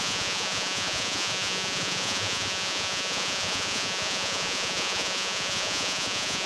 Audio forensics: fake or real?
fake